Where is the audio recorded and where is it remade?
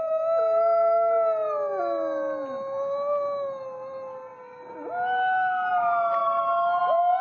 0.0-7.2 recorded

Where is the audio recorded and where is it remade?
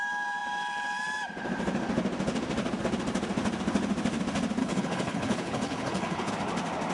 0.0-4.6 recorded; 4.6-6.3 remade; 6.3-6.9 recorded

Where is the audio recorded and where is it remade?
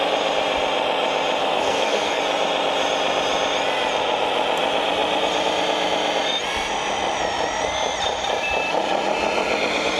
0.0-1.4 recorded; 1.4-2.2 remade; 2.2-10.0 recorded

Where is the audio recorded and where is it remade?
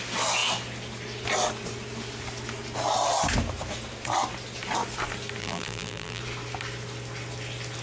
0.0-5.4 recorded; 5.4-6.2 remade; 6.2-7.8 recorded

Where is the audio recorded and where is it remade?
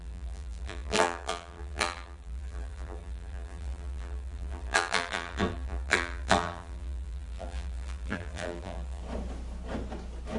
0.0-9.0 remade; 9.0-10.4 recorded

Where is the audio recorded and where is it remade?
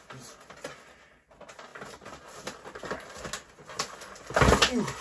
0.0-5.0 recorded